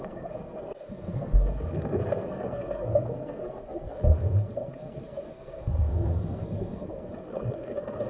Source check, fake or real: fake